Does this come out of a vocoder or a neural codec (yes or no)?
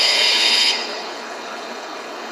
yes